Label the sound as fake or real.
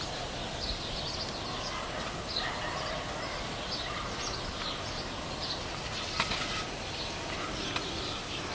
real